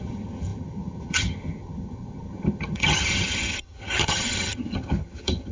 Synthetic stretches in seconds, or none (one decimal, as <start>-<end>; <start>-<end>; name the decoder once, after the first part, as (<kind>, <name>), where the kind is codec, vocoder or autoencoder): 0.0-5.5 (vocoder, HiFi-GAN)